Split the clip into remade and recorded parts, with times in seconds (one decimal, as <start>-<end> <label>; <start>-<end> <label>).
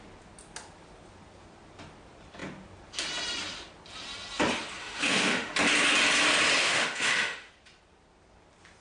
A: 0.0-4.8 recorded; 4.8-5.5 remade; 5.5-6.6 recorded; 6.6-7.5 remade; 7.5-8.8 recorded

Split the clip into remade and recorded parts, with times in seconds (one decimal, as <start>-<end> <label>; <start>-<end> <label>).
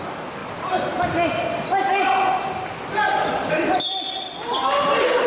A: 0.0-5.3 recorded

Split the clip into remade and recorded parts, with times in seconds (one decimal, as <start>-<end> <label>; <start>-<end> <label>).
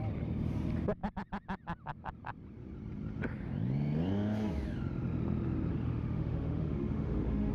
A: 0.0-5.7 recorded; 5.7-7.5 remade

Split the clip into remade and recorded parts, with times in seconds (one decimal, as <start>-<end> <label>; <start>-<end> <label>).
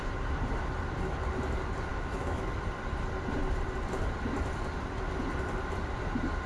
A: 0.0-1.9 recorded; 1.9-2.5 remade; 2.5-6.5 recorded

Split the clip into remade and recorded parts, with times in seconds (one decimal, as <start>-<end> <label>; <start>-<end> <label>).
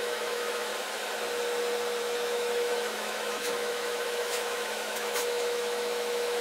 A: 0.0-0.7 remade; 0.7-2.0 recorded; 2.0-6.4 remade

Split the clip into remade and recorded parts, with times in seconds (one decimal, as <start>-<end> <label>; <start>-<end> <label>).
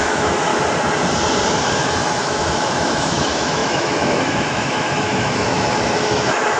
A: 0.0-0.5 remade; 0.5-2.2 recorded; 2.2-6.6 remade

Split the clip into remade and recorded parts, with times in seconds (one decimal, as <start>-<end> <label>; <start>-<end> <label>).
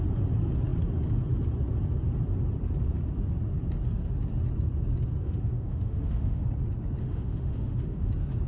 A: 0.0-5.2 recorded; 5.2-6.5 remade; 6.5-7.0 recorded; 7.0-8.1 remade; 8.1-8.5 recorded